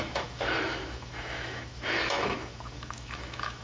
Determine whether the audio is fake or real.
fake